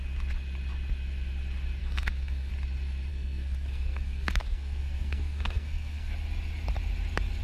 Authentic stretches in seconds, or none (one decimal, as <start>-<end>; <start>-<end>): 0.0-1.8; 2.5-3.1; 6.1-7.4